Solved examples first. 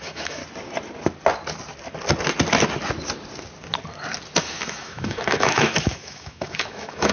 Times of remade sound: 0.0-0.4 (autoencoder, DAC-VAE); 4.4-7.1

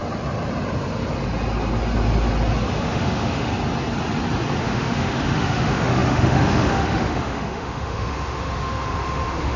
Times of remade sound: 2.7-3.5 (autoencoder, DAC-VAE); 4.6-9.6

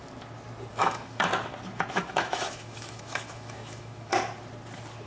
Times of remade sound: 0.7-1.3 (autoencoder, DAC-VAE); 1.9-4.1

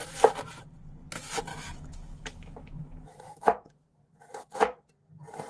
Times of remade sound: 1.5-4.8 (autoencoder, DAC-VAE)

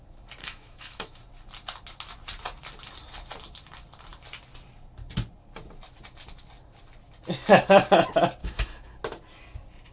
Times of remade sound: 0.4-1.2 (autoencoder, DAC-VAE); 8.4-9.0